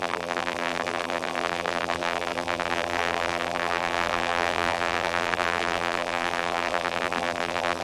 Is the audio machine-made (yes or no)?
yes